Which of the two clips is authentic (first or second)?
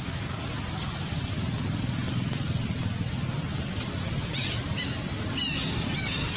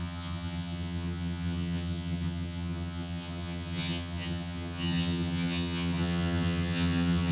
first